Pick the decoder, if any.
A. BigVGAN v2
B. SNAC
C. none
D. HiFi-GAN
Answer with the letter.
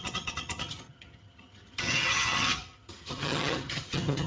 D